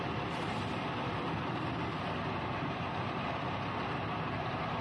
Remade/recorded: recorded